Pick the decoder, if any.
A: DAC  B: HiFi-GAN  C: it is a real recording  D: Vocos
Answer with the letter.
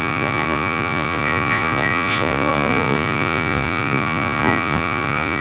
D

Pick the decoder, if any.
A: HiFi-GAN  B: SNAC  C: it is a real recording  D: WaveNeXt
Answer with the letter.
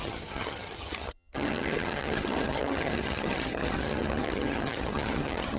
A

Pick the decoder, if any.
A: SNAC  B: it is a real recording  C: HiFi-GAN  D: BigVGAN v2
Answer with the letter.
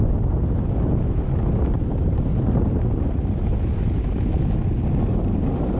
B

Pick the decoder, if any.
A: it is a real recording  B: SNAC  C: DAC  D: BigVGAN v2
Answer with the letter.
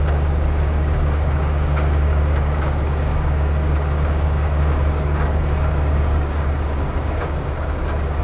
C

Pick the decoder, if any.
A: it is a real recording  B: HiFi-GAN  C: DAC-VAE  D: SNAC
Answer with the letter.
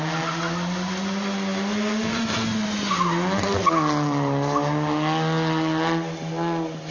A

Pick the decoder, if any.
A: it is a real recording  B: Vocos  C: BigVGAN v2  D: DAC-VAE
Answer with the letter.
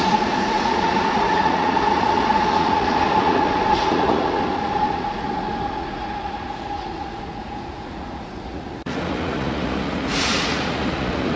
B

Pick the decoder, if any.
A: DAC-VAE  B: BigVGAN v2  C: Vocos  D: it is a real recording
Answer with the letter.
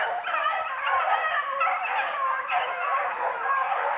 D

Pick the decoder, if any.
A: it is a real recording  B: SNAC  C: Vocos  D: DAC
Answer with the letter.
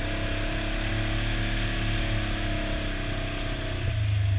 A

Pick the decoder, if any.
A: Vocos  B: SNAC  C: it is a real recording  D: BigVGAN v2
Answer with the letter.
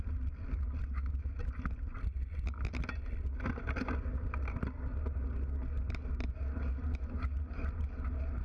C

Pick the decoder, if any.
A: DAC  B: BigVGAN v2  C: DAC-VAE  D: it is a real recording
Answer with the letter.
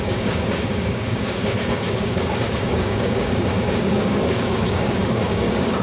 A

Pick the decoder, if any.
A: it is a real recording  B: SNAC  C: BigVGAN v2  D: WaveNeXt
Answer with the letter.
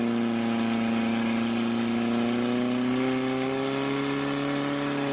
A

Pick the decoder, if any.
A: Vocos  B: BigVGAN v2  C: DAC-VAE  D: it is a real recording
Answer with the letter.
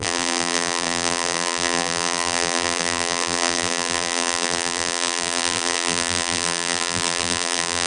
B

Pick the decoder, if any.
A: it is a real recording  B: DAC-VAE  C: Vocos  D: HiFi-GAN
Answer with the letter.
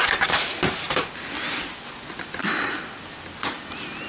A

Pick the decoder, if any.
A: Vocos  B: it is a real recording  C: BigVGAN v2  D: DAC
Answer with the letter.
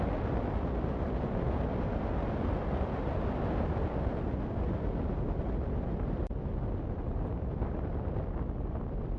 B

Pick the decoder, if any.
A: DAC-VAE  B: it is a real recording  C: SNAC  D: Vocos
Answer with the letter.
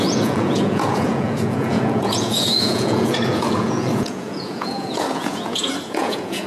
D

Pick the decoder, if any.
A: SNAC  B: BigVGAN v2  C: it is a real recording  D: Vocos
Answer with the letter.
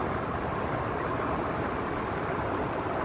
C